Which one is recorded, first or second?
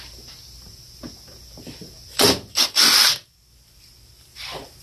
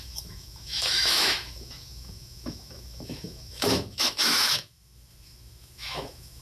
first